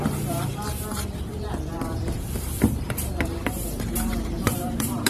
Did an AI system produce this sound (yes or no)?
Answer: yes